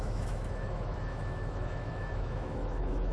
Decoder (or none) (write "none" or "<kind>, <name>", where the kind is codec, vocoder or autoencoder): autoencoder, DAC-VAE